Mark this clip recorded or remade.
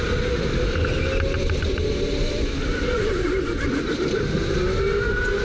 recorded